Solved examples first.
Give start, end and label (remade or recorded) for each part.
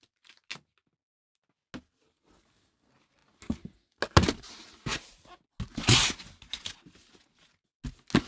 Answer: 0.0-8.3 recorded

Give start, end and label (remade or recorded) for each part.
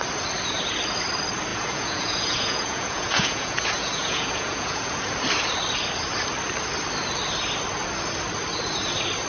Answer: 0.0-1.5 recorded; 1.5-5.0 remade; 5.0-9.3 recorded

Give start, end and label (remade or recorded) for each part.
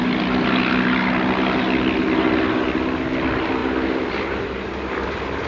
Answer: 0.0-3.6 recorded; 3.6-5.5 remade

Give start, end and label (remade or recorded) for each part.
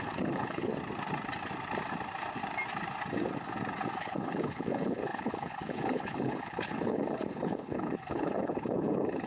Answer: 0.0-0.7 remade; 0.7-4.0 recorded; 4.0-9.3 remade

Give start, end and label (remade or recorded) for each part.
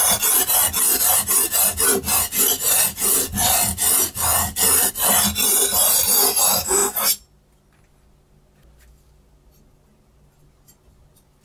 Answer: 0.0-11.4 recorded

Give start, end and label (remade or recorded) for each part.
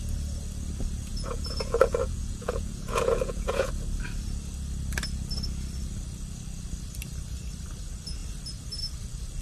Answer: 0.0-1.1 recorded; 1.1-3.7 remade; 3.7-9.4 recorded